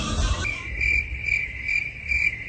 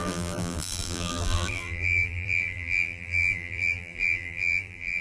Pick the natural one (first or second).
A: first